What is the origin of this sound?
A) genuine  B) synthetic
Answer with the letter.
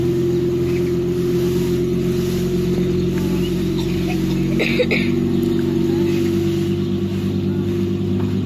A